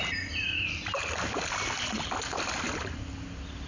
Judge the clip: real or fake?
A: real